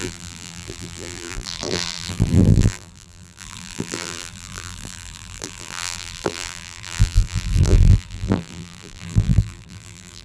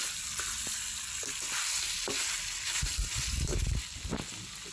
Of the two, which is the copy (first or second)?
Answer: first